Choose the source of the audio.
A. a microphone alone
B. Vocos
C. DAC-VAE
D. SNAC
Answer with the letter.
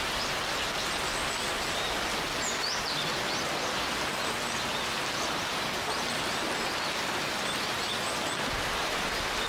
A